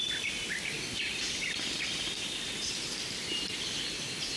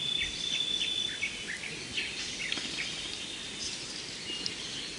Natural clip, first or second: second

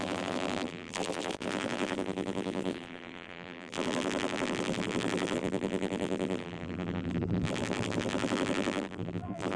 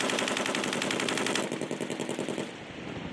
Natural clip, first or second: second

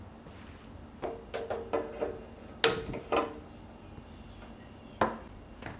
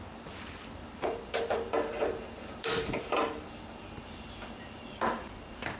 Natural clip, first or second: first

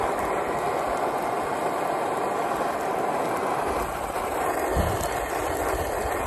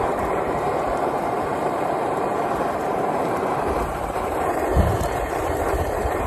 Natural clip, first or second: first